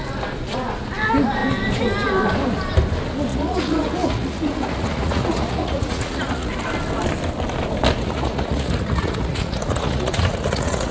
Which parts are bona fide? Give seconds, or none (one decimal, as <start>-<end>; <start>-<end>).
0.0-3.3; 6.5-8.0